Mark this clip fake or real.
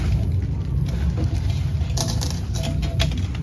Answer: real